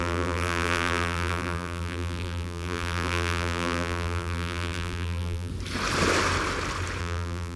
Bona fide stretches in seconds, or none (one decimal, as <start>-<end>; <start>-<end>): 5.5-7.0